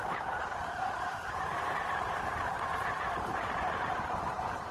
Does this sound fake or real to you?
fake